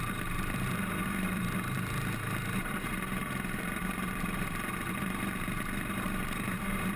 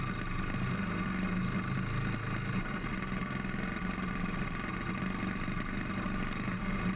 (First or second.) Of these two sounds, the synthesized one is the first